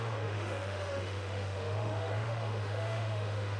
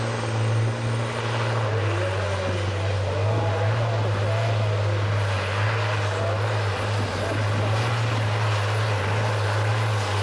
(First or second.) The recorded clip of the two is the second